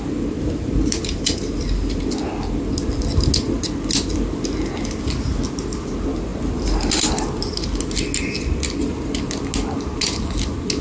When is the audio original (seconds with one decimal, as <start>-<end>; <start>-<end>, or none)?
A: 0.0-10.8